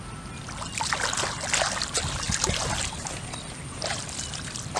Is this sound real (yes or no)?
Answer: yes